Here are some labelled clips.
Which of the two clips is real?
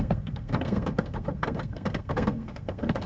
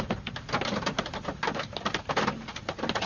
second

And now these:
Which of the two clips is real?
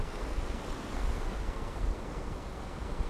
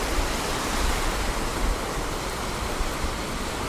second